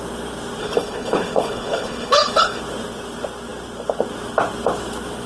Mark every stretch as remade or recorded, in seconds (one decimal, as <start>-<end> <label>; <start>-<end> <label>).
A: 0.0-0.6 recorded; 0.6-2.6 remade; 2.6-5.3 recorded